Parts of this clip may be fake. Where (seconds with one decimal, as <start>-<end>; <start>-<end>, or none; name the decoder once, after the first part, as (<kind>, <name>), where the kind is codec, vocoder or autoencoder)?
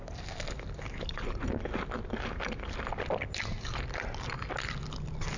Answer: none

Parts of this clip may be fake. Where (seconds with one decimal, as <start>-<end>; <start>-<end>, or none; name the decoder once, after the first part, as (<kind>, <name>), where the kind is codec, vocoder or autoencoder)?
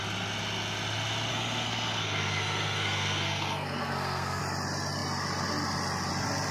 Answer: 1.3-4.4 (codec, SNAC)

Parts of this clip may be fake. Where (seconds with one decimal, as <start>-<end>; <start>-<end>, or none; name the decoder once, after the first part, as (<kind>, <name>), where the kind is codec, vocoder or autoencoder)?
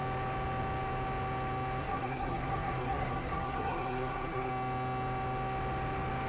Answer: 1.8-4.5 (codec, SNAC)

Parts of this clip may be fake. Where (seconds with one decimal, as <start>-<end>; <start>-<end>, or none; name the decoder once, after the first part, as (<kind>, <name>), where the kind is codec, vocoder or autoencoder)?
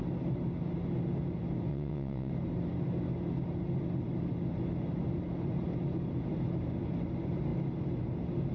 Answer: 1.7-2.3 (vocoder, WaveNeXt)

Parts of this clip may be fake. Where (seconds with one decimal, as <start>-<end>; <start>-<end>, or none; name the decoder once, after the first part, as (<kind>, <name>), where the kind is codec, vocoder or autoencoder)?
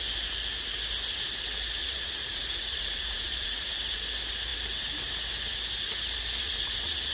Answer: 1.8-3.7 (vocoder, Vocos); 6.4-7.1